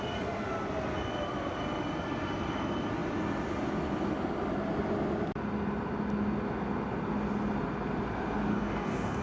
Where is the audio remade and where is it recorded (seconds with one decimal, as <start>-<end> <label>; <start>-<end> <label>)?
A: 0.0-8.5 recorded; 8.5-9.2 remade